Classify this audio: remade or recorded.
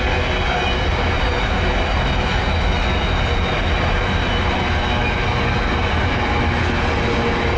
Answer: recorded